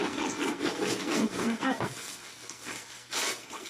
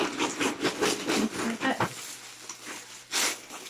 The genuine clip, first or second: second